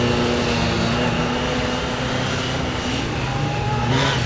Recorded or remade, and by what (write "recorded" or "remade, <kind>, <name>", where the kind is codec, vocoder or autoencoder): recorded